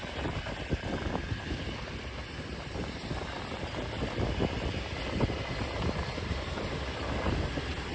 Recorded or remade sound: recorded